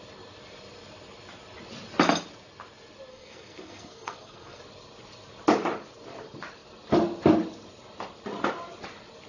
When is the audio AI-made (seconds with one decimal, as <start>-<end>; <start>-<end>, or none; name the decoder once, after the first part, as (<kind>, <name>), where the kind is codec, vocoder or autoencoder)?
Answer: 3.1-4.6 (codec, SNAC)